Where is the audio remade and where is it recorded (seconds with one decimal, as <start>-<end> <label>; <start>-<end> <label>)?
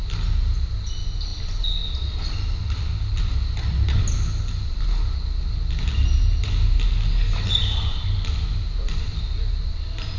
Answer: 0.0-10.2 recorded